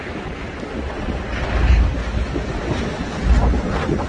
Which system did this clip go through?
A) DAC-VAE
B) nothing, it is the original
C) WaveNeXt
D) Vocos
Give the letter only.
B